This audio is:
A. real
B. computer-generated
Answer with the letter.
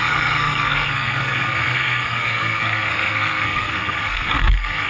B